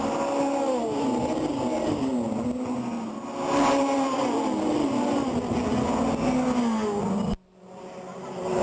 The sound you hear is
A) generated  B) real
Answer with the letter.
B